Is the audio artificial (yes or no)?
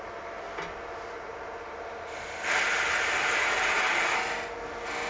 no